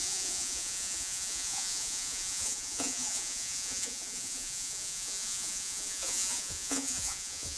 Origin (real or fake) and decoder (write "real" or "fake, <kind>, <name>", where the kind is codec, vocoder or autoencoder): fake, vocoder, Vocos